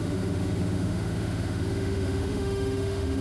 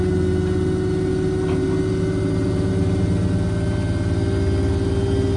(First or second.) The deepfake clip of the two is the first